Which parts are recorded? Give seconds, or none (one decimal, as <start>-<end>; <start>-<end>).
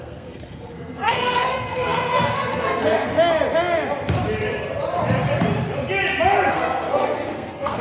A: 3.1-6.5